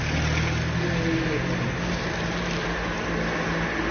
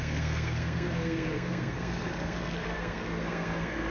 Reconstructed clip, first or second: second